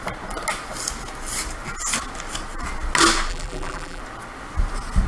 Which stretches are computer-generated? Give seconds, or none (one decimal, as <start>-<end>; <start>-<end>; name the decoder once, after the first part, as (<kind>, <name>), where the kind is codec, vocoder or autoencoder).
3.3-4.0 (vocoder, BigVGAN v2)